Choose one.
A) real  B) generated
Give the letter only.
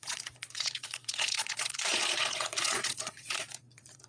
B